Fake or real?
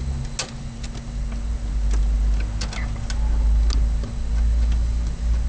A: real